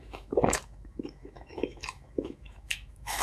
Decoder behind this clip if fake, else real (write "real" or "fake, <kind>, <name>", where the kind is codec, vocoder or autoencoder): fake, autoencoder, DAC-VAE